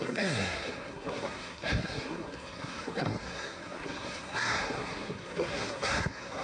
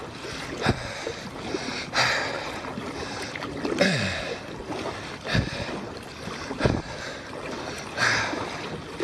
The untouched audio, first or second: second